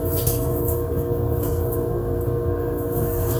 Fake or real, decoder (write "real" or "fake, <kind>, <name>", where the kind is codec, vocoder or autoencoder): fake, codec, SNAC